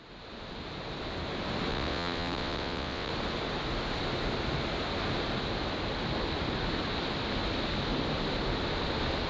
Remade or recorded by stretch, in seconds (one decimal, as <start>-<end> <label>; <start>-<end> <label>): 0.0-1.7 recorded; 1.7-3.1 remade; 3.1-9.3 recorded